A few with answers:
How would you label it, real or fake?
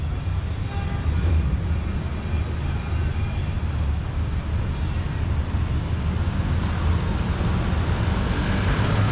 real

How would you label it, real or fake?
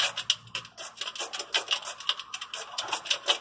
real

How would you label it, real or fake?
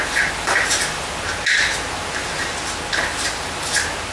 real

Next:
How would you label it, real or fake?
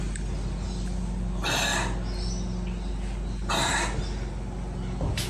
real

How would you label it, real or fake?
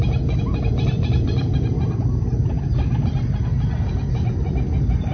real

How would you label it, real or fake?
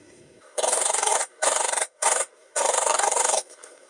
fake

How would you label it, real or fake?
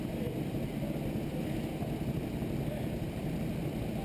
real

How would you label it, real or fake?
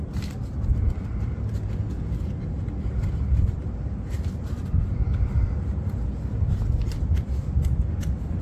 real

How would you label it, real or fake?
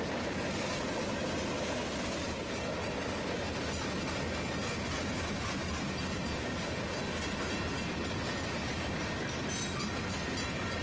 real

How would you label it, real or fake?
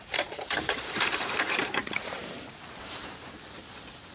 fake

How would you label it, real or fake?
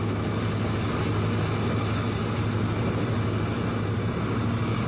real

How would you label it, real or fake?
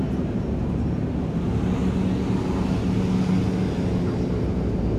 real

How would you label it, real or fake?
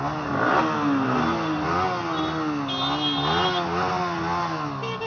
real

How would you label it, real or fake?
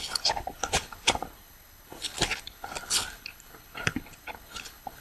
fake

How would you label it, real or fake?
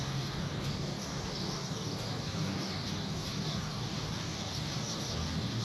fake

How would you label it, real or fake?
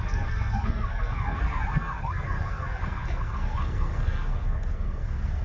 fake